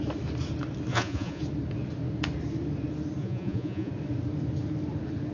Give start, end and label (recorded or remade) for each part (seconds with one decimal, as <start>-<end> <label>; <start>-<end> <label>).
0.0-0.9 recorded; 0.9-1.4 remade; 1.4-3.2 recorded; 3.2-3.9 remade; 3.9-5.3 recorded